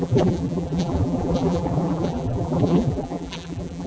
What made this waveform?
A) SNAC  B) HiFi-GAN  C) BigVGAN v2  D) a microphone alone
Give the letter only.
C